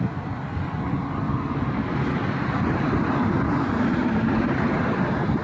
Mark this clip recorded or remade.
recorded